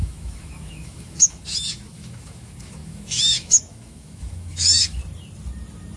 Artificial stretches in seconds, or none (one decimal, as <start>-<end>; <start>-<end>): 0.0-5.0